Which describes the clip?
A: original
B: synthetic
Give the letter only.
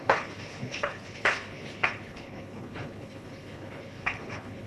B